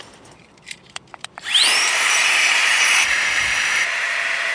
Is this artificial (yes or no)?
yes